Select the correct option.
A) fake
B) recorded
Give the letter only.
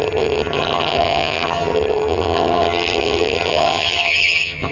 A